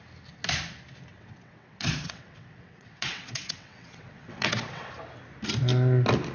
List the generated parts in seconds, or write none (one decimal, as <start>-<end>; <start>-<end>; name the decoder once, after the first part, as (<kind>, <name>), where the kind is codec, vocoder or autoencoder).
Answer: 1.1-4.9 (vocoder, WaveNeXt)